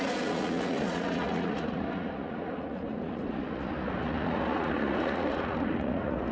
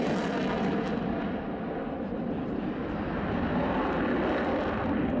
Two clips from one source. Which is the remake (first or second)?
first